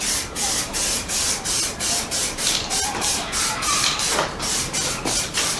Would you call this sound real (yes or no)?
no